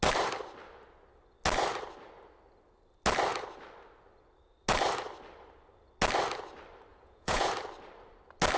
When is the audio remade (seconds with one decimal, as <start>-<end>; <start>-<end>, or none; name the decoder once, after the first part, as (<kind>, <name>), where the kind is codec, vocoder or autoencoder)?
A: 6.9-7.5 (vocoder, Vocos)